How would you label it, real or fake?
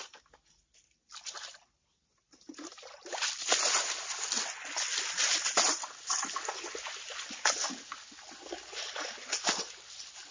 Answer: real